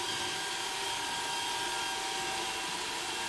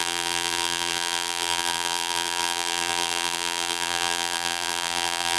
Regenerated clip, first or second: second